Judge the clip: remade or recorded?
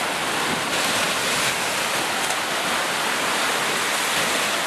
recorded